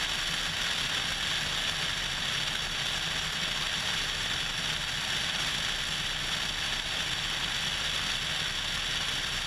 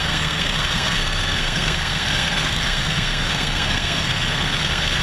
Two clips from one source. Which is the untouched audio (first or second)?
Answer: first